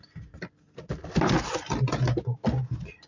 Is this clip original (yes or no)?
yes